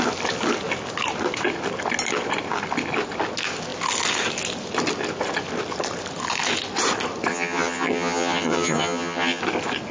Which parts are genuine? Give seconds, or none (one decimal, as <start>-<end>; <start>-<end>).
0.0-7.3; 9.4-9.9